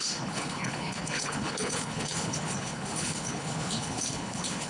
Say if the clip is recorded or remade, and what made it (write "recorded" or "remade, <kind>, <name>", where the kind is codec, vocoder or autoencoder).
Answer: remade, codec, HILCodec